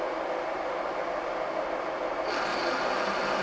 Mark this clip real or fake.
real